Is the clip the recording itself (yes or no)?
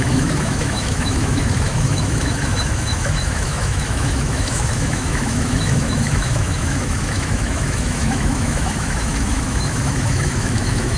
no